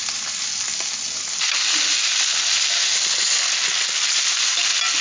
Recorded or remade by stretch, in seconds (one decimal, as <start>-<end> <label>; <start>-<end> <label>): 0.0-5.0 recorded